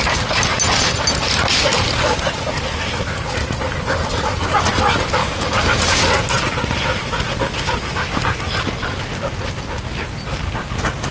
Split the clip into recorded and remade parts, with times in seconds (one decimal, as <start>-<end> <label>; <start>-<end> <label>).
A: 0.0-5.2 recorded; 5.2-5.8 remade; 5.8-11.1 recorded